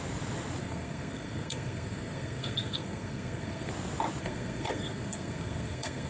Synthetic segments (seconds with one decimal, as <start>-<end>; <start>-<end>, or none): 0.6-3.7; 4.2-6.1